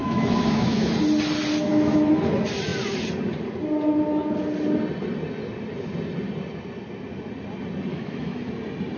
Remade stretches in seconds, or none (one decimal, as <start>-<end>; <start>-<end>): 0.0-0.9; 1.7-2.2; 7.9-8.5

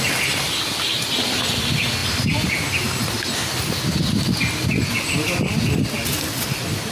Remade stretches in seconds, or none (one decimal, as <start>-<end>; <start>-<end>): none

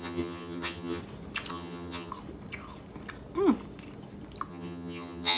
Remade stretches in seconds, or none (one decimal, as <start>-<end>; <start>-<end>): 0.0-1.0; 1.5-2.1; 4.5-5.4

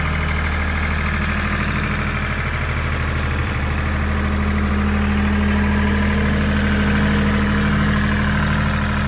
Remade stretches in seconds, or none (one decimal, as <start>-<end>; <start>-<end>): 3.4-4.7

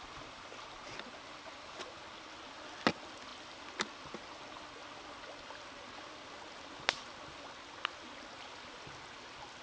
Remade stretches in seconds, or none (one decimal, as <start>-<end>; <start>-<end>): none

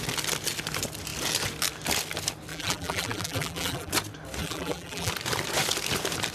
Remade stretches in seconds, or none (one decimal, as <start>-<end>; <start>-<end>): 2.5-3.9; 4.4-5.1

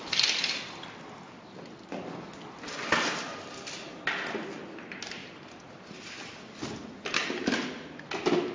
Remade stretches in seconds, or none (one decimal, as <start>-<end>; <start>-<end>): 3.3-4.0; 5.2-5.9